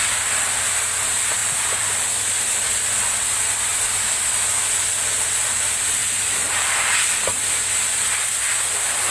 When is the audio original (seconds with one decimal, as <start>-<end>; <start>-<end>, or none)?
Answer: 0.0-1.4; 2.3-6.0; 7.4-9.1